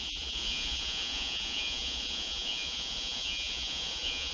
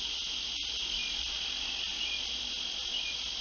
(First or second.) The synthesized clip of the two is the first